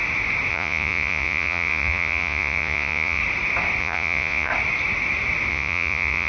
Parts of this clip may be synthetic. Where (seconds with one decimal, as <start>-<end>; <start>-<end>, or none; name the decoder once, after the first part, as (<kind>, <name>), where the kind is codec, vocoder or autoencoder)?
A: 0.5-3.2 (vocoder, Vocos); 3.8-4.5; 5.5-6.3